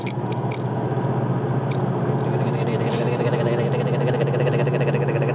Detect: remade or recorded recorded